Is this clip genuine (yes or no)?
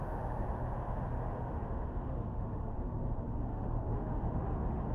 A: no